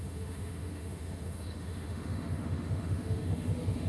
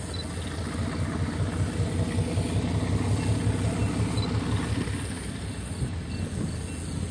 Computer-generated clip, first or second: first